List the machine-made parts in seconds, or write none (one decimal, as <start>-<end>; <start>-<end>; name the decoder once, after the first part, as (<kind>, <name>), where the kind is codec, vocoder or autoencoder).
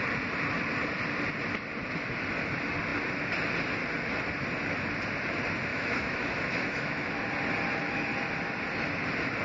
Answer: 5.7-7.2 (autoencoder, DAC-VAE)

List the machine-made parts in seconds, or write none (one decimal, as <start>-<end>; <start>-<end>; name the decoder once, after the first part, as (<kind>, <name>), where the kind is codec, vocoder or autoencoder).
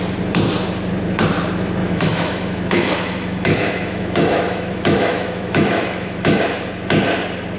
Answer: 1.8-6.4 (autoencoder, DAC-VAE)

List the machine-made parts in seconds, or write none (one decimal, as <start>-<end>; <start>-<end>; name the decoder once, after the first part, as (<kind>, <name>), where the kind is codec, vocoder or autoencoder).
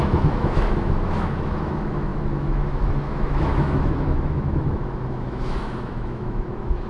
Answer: 0.0-6.9 (autoencoder, DAC-VAE)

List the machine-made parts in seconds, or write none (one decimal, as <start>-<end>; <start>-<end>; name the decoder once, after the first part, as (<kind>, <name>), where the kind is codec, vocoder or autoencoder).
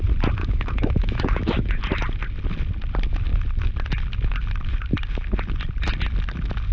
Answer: 0.4-1.8 (autoencoder, DAC-VAE)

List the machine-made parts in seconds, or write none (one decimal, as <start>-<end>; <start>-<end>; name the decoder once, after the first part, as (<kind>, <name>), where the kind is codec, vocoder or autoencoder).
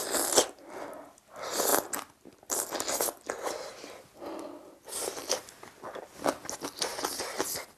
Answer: none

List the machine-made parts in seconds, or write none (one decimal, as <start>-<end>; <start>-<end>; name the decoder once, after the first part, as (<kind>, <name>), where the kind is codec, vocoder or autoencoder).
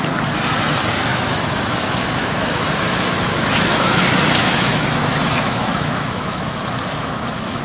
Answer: 1.1-4.0 (autoencoder, DAC-VAE); 4.4-7.6